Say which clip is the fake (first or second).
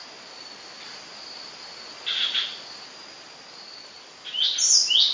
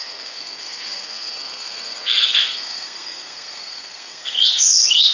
second